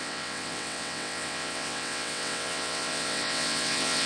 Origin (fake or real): fake